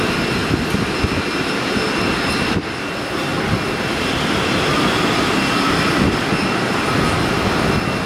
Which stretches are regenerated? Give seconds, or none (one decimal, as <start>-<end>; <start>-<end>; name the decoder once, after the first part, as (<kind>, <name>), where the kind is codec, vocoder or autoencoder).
3.3-6.7 (vocoder, BigVGAN v2)